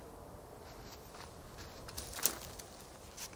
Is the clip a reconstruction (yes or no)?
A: no